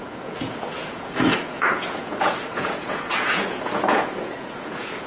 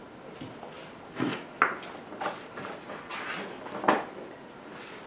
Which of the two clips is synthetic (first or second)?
first